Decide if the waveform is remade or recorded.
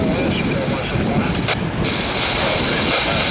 recorded